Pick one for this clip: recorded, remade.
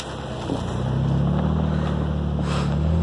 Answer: recorded